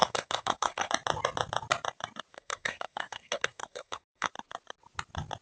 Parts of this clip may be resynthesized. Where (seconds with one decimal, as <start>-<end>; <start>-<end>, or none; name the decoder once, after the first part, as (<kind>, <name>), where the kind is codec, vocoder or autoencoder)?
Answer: 0.0-0.9 (codec, SNAC); 2.3-4.3